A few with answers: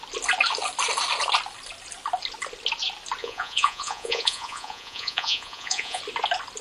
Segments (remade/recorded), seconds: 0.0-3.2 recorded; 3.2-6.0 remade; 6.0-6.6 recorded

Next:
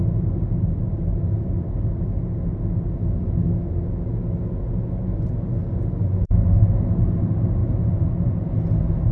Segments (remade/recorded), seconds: 0.0-7.6 recorded; 7.6-8.5 remade; 8.5-9.1 recorded